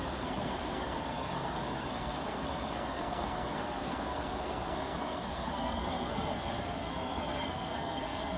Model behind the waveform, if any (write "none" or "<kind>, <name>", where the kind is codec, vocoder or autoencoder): codec, SNAC